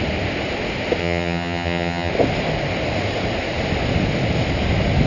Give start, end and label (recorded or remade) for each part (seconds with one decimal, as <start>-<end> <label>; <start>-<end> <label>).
0.0-1.0 recorded; 1.0-2.1 remade; 2.1-5.1 recorded